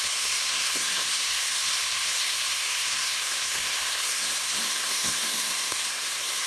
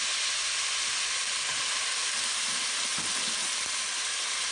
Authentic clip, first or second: second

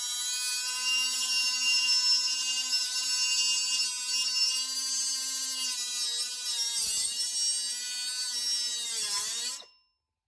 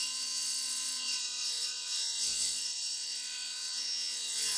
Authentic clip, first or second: first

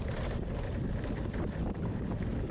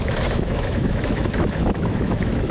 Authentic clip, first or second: first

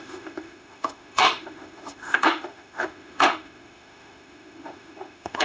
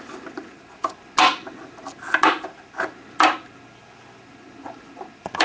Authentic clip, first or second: second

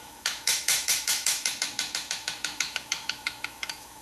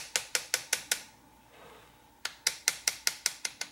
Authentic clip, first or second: second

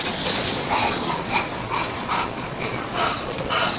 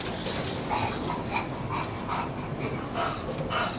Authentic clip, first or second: second